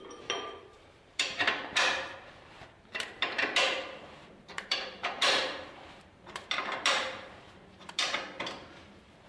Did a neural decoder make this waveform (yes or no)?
yes